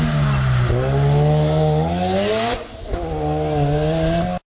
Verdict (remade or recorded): recorded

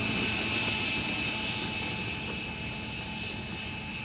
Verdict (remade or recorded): recorded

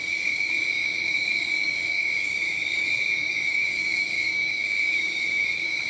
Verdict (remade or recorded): remade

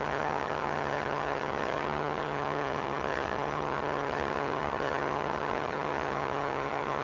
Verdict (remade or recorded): remade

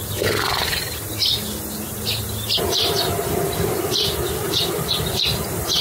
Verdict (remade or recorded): recorded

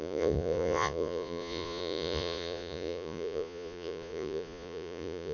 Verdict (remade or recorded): remade